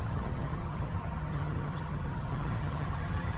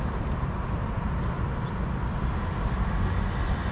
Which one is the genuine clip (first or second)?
second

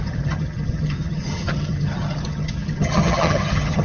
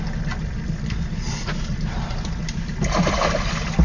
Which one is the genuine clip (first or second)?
second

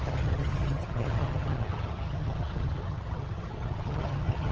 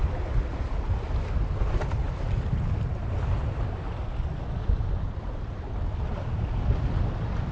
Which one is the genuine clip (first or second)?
second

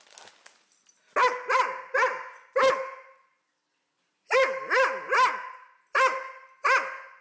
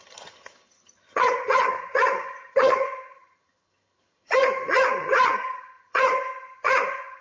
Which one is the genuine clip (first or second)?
first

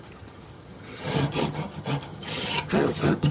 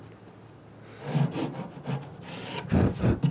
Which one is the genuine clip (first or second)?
second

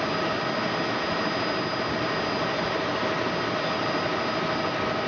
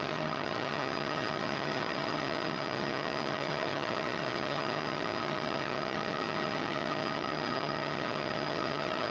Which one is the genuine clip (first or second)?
first